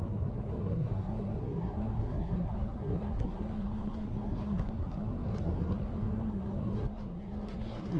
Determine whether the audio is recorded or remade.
remade